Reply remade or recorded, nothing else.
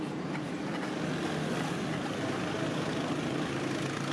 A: recorded